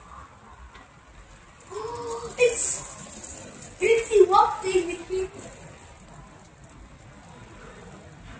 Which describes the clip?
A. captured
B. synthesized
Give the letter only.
A